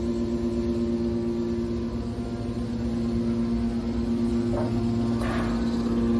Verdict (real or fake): real